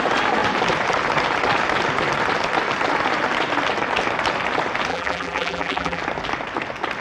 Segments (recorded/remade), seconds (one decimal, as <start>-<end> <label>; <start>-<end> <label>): 0.0-4.9 recorded; 4.9-6.0 remade; 6.0-7.0 recorded